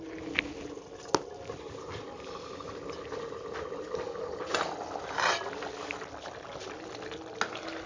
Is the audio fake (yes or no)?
no